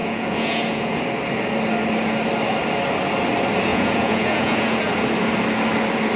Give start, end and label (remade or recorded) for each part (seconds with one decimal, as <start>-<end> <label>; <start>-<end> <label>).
0.0-1.0 remade; 1.0-3.7 recorded; 3.7-4.9 remade; 4.9-6.2 recorded